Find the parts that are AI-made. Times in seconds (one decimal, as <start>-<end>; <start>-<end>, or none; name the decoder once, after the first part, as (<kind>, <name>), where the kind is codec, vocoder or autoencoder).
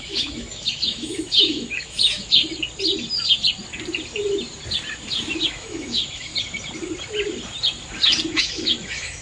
0.0-2.4 (autoencoder, DAC-VAE); 5.5-6.3; 8.3-9.2